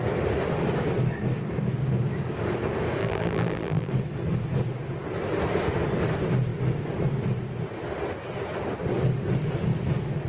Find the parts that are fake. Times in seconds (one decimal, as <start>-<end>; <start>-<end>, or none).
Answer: 3.0-3.9